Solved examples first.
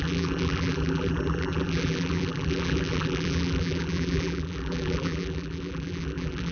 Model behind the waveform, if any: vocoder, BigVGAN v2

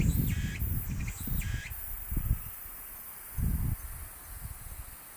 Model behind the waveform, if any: none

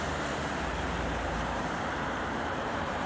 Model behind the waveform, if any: vocoder, BigVGAN v2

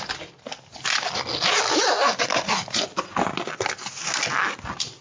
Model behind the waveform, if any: none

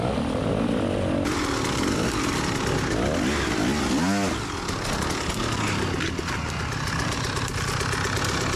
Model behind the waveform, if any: none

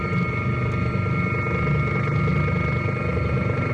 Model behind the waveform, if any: none